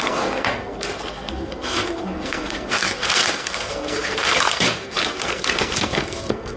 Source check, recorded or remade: remade